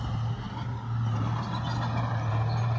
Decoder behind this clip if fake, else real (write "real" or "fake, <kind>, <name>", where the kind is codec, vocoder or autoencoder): real